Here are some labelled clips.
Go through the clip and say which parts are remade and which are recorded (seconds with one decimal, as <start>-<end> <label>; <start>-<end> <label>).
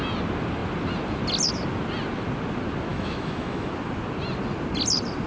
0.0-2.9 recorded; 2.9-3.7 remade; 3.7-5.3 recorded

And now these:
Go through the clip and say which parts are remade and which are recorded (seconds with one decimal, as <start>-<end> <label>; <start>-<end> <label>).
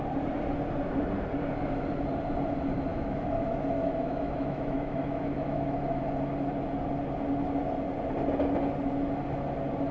0.0-2.9 recorded; 2.9-6.0 remade; 6.0-9.9 recorded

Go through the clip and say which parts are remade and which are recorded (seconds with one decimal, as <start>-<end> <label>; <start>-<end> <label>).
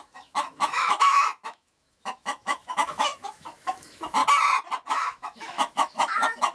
0.0-4.2 remade; 4.2-4.9 recorded; 4.9-6.5 remade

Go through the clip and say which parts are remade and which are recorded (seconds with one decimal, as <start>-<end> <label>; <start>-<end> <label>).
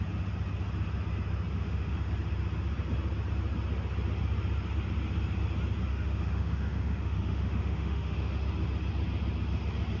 0.0-1.5 recorded; 1.5-2.1 remade; 2.1-5.9 recorded; 5.9-8.3 remade; 8.3-10.0 recorded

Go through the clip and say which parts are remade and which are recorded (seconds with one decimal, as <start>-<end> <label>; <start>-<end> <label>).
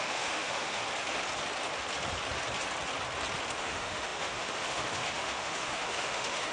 0.0-0.8 remade; 0.8-3.6 recorded; 3.6-6.5 remade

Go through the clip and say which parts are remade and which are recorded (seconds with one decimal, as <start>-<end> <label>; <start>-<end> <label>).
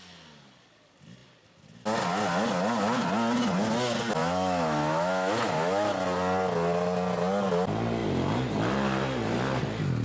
0.0-4.2 recorded; 4.2-5.9 remade; 5.9-10.0 recorded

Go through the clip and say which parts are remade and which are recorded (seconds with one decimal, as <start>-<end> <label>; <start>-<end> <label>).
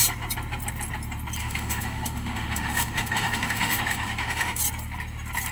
0.0-1.4 recorded; 1.4-4.6 remade; 4.6-5.5 recorded